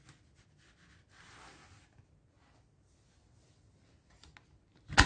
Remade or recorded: recorded